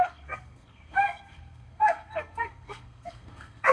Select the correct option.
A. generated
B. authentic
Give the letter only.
A